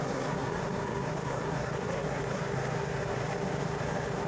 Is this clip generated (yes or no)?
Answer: yes